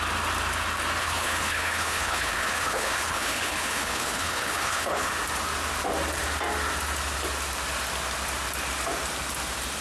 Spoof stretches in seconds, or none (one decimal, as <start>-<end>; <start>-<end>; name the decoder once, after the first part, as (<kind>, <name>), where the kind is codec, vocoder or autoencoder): 1.0-5.1 (codec, HILCodec)